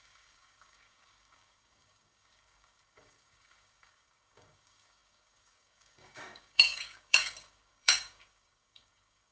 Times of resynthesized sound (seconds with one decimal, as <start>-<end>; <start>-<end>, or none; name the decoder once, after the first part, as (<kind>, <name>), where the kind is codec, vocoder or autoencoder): 0.0-9.3 (codec, DAC)